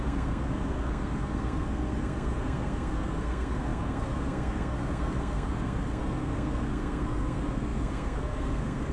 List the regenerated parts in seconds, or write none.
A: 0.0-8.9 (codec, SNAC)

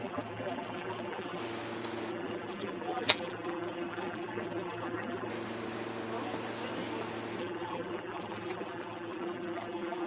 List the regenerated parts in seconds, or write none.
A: 0.0-1.4 (vocoder, BigVGAN v2); 2.1-5.3; 7.4-10.1

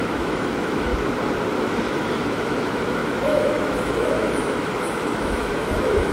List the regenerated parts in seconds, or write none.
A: 0.0-0.9 (autoencoder, DAC-VAE); 1.6-6.1

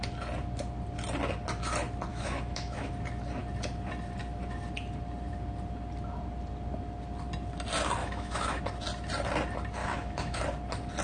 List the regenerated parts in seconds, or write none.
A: 2.1-2.9 (autoencoder, DAC-VAE); 8.0-8.6; 9.8-10.4

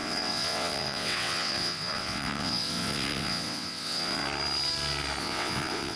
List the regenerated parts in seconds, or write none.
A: 0.0-4.2 (vocoder, WaveNeXt); 5.2-6.0

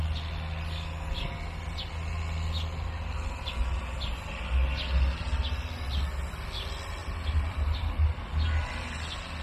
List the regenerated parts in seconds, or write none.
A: 7.0-8.2 (vocoder, BigVGAN v2)

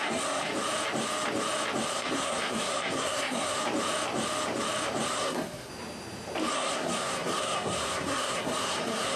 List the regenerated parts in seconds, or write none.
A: 0.0-0.5 (codec, SNAC); 1.9-3.6; 5.1-5.7; 6.5-9.2

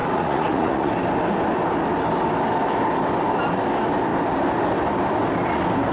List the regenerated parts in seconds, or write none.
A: 0.0-0.9 (vocoder, Vocos)